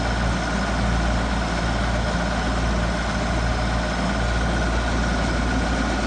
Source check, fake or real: real